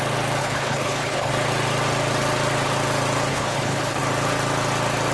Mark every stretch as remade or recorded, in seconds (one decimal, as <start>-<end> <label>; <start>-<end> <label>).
0.0-0.4 recorded; 0.4-1.3 remade; 1.3-3.3 recorded; 3.3-4.0 remade; 4.0-5.1 recorded